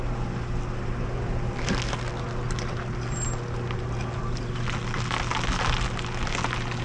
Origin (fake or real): real